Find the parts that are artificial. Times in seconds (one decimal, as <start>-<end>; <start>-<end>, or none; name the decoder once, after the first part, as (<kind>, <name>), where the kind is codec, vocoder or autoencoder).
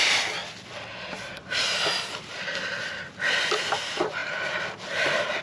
none